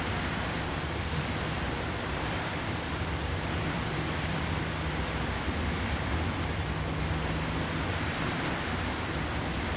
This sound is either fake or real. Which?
fake